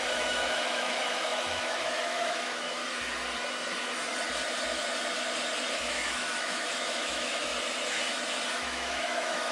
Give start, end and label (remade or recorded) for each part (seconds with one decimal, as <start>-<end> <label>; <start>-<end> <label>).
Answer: 0.0-2.8 remade; 2.8-5.7 recorded; 5.7-7.5 remade; 7.5-8.5 recorded; 8.5-9.5 remade